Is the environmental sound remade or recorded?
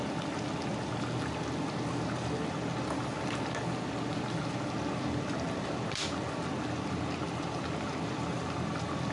recorded